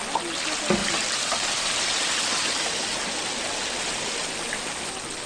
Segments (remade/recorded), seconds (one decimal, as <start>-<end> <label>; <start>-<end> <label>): 0.0-0.8 recorded; 0.8-4.0 remade; 4.0-5.3 recorded